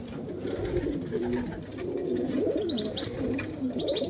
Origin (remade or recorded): recorded